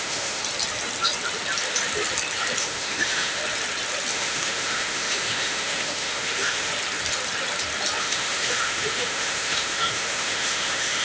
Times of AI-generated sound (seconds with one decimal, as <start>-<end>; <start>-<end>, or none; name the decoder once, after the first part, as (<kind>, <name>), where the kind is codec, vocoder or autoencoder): 0.0-0.4 (autoencoder, DAC-VAE); 2.6-3.4; 4.1-6.7; 8.0-11.0